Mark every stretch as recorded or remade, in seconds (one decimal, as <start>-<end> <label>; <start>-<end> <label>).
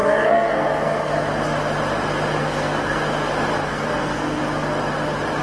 0.0-1.1 remade; 1.1-2.4 recorded; 2.4-3.0 remade; 3.0-3.7 recorded; 3.7-4.4 remade; 4.4-5.4 recorded